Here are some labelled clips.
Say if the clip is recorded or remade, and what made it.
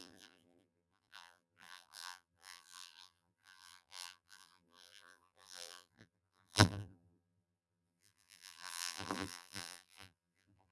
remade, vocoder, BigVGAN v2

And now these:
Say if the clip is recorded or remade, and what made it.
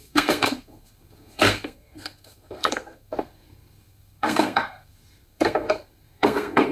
remade, codec, SNAC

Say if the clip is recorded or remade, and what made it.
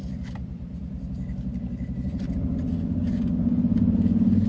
recorded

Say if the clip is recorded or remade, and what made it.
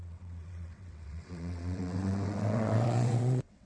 remade, vocoder, WaveNeXt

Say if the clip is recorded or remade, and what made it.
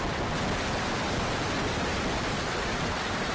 recorded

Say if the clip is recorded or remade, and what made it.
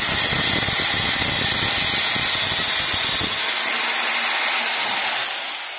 recorded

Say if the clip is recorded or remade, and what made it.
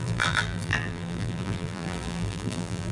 remade, vocoder, BigVGAN v2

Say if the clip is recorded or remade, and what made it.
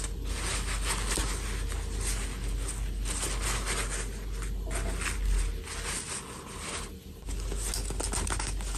recorded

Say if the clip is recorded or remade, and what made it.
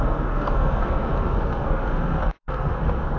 remade, codec, SNAC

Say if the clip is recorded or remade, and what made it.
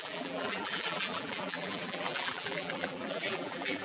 remade, vocoder, BigVGAN v2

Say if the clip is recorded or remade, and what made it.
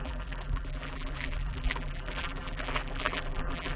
remade, vocoder, BigVGAN v2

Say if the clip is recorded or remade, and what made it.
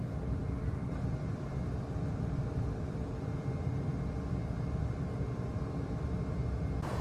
remade, vocoder, BigVGAN v2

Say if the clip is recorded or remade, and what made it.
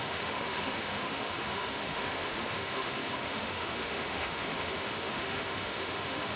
remade, autoencoder, DAC-VAE